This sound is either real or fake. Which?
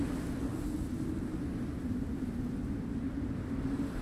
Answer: real